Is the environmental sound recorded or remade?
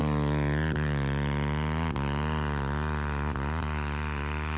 recorded